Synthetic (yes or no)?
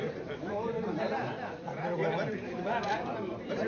yes